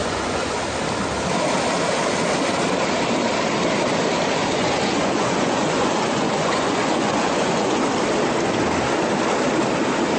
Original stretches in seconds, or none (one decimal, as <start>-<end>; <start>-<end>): 0.6-4.4; 7.8-10.2